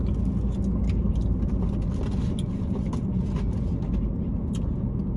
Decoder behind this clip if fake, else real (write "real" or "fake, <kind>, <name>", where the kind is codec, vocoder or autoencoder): real